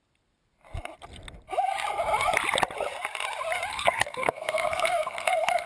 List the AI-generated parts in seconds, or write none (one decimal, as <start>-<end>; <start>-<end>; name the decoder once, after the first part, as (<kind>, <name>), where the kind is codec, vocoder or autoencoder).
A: 3.7-5.7 (codec, SNAC)